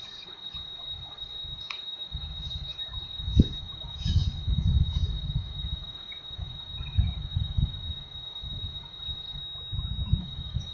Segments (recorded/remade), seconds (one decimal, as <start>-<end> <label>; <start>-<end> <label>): 0.0-9.4 remade; 9.4-10.2 recorded; 10.2-10.7 remade